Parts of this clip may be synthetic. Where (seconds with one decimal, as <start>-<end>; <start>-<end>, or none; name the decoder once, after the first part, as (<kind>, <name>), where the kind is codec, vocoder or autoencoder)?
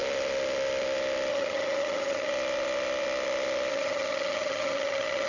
1.3-2.3 (vocoder, HiFi-GAN); 3.7-5.3